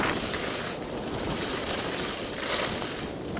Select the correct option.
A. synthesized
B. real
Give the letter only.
B